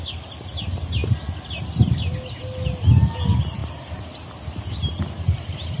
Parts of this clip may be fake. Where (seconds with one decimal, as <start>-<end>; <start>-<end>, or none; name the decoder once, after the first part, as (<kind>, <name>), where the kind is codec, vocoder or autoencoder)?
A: none